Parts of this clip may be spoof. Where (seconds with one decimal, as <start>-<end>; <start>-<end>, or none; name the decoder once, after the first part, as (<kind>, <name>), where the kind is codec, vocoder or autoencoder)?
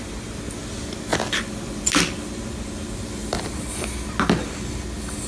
3.2-3.8 (vocoder, BigVGAN v2)